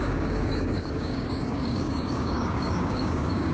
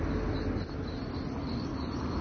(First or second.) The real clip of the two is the second